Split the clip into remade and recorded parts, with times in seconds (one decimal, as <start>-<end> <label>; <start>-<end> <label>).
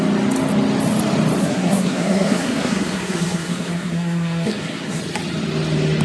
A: 0.0-1.4 recorded; 1.4-5.0 remade; 5.0-6.0 recorded